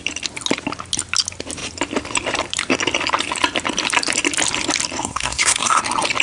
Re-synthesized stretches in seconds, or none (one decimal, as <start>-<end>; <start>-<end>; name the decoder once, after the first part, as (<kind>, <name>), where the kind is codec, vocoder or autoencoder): 5.0-5.8 (codec, SNAC)